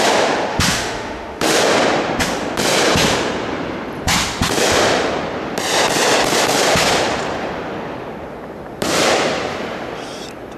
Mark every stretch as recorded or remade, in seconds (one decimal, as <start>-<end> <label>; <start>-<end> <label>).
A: 0.0-0.5 recorded; 0.5-1.6 remade; 1.6-10.6 recorded

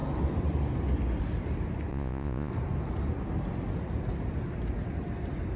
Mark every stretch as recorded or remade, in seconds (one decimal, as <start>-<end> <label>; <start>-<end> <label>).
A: 0.0-1.9 recorded; 1.9-2.5 remade; 2.5-5.6 recorded

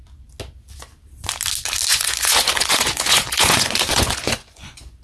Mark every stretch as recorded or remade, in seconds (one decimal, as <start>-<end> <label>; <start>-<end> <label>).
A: 0.0-1.9 recorded; 1.9-5.0 remade

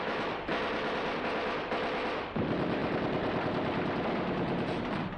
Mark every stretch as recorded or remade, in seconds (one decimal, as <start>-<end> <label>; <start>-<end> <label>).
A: 0.0-5.2 recorded

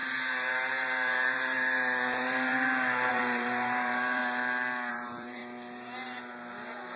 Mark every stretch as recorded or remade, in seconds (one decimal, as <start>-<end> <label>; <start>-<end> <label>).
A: 0.0-2.5 remade; 2.5-3.1 recorded; 3.1-4.2 remade; 4.2-4.9 recorded; 4.9-5.4 remade; 5.4-7.0 recorded

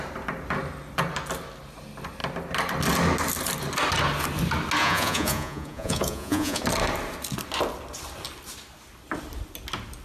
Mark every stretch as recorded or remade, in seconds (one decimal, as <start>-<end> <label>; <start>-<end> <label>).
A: 0.0-4.8 recorded; 4.8-6.6 remade; 6.6-10.0 recorded

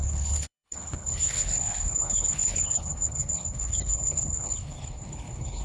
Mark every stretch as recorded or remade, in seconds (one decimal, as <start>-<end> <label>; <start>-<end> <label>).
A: 0.0-5.6 remade